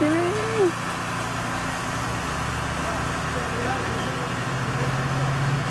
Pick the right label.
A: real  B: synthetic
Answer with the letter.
A